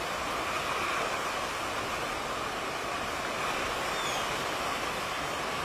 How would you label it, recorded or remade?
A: recorded